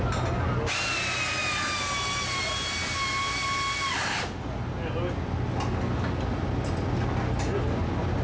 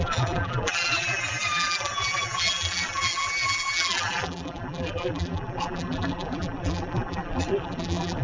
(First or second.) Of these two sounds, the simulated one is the second